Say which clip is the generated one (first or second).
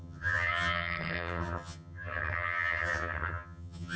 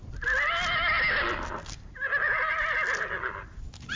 first